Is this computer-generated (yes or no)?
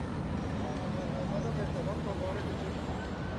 no